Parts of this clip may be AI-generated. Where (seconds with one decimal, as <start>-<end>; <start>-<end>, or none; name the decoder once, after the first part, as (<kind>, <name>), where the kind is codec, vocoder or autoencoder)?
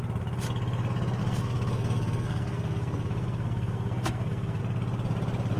1.2-4.6 (codec, SNAC)